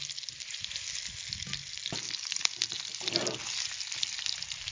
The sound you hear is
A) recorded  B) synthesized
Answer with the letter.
A